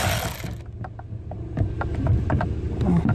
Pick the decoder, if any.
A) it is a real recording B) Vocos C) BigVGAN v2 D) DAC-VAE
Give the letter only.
A